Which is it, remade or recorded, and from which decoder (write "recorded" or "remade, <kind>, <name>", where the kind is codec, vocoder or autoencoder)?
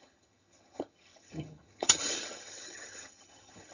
remade, vocoder, HiFi-GAN